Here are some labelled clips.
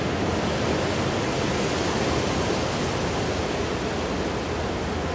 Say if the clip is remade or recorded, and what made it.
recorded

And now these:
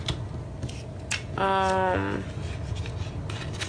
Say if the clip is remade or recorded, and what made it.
recorded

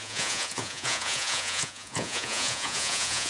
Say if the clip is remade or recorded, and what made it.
remade, vocoder, Vocos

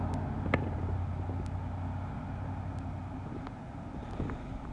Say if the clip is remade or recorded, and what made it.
recorded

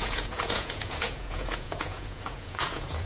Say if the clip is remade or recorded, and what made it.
remade, vocoder, Vocos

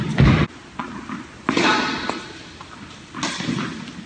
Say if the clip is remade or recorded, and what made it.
recorded